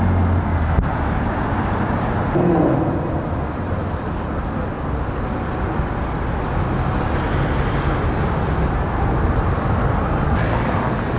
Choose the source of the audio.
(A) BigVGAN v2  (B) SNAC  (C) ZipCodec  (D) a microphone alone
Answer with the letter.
D